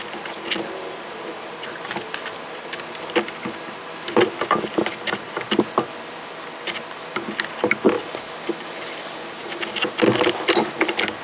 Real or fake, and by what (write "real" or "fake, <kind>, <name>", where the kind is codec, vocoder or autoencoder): real